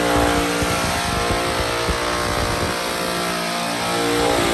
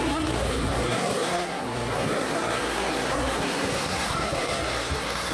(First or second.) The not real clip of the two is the second